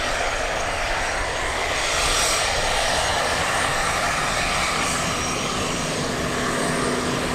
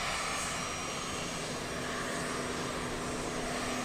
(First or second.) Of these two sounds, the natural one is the second